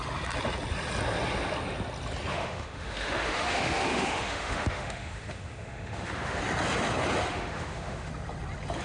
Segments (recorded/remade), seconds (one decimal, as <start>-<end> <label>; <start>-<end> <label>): 0.0-2.3 recorded; 2.3-6.4 remade; 6.4-7.3 recorded; 7.3-8.1 remade; 8.1-8.8 recorded